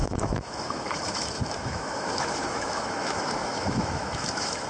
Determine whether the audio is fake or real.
fake